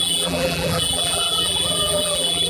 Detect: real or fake fake